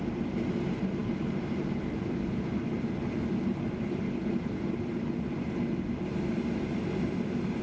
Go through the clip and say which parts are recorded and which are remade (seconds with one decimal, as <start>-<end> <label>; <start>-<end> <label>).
0.0-7.6 recorded